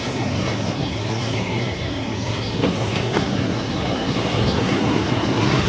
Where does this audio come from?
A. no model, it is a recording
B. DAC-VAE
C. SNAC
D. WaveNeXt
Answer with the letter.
C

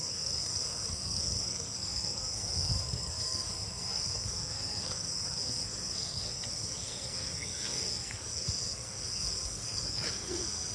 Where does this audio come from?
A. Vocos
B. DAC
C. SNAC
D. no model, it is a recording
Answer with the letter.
C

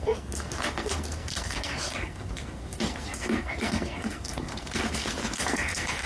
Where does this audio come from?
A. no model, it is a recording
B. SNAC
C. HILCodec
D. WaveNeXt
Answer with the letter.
B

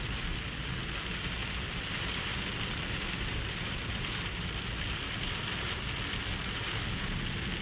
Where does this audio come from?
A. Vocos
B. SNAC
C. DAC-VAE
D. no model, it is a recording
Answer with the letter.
D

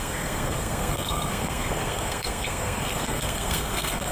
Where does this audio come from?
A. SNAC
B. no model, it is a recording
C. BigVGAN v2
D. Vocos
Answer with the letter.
A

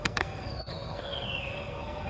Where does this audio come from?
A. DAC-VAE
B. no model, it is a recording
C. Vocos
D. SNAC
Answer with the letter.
D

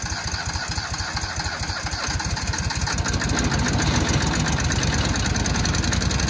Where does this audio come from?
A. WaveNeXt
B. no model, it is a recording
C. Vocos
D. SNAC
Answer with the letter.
B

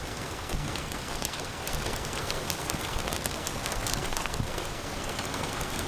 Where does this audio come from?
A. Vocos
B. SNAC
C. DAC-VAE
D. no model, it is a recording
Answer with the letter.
B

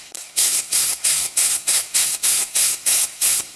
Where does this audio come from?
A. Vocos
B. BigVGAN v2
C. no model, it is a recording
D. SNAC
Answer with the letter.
D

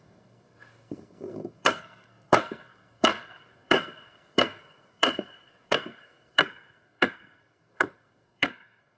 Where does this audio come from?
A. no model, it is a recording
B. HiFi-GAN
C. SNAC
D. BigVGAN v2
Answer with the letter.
C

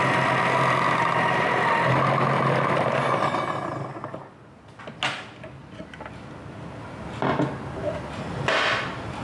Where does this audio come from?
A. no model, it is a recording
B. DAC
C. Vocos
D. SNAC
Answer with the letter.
A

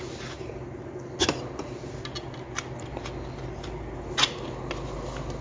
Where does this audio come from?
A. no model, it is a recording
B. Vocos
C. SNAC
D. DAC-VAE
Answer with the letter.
A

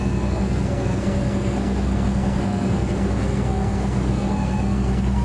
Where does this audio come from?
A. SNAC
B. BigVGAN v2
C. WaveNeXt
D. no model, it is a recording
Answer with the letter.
A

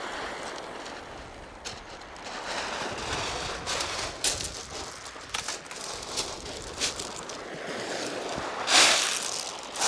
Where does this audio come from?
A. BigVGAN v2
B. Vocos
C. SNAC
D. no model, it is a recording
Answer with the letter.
D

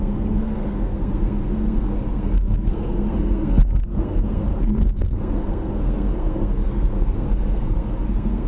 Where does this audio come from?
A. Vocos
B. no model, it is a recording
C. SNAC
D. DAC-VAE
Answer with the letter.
C